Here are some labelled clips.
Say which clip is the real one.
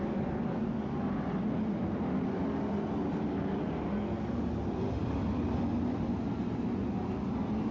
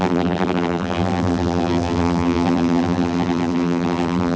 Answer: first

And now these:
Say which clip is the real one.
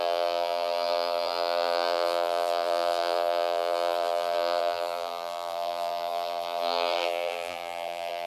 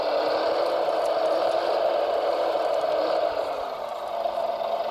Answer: second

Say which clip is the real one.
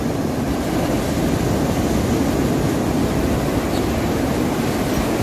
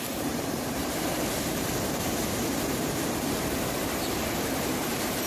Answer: first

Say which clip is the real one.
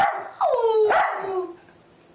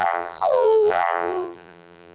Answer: first